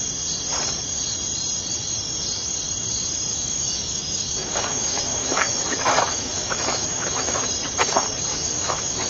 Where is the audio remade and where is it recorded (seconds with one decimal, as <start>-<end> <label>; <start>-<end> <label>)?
0.0-3.3 recorded; 3.3-7.5 remade; 7.5-8.3 recorded; 8.3-9.1 remade